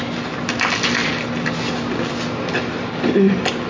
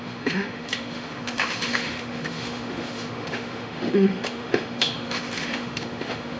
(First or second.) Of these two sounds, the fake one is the second